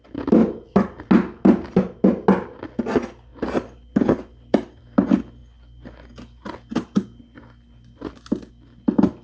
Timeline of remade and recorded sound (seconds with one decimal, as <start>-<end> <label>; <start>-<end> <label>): 0.0-0.4 recorded; 0.4-1.1 remade; 1.1-3.3 recorded; 3.3-4.7 remade; 4.7-9.2 recorded